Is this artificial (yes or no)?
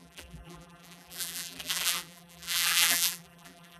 yes